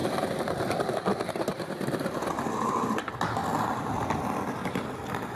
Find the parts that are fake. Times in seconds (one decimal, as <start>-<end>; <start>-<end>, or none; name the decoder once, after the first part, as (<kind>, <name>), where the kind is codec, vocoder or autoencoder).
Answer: 1.5-2.1 (vocoder, BigVGAN v2)

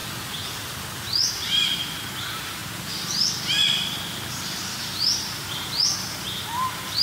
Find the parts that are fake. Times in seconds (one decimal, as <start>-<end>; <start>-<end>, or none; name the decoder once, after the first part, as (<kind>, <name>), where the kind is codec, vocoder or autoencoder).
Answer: 1.4-7.0 (vocoder, BigVGAN v2)

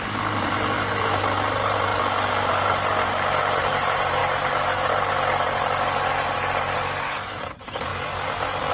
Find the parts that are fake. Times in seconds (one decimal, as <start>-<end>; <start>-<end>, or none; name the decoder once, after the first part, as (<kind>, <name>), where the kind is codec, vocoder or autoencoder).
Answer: 0.0-1.9 (vocoder, BigVGAN v2); 2.5-7.9

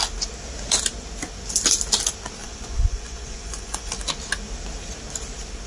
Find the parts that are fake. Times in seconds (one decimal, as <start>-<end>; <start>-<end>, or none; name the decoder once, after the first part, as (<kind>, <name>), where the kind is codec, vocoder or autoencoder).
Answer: 2.4-3.9 (vocoder, Vocos)